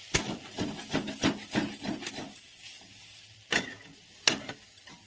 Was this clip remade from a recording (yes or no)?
no